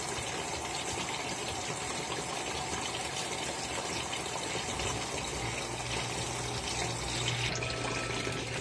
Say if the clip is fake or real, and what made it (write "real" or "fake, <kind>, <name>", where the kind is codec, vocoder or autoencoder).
real